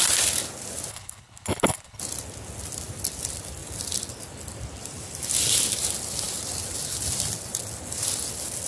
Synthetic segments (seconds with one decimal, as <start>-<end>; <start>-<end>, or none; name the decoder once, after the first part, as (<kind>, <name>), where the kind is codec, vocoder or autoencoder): 0.9-2.0 (codec, HILCodec)